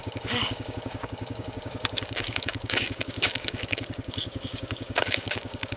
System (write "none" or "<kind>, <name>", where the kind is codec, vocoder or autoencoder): codec, DAC